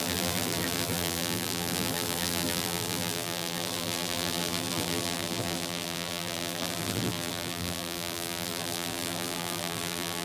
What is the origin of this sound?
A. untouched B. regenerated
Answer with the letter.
B